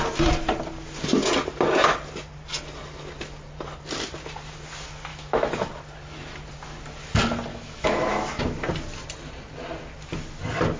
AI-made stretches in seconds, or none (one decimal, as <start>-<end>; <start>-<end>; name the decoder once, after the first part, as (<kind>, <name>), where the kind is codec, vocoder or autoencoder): 5.1-5.7 (autoencoder, DAC-VAE); 7.5-8.4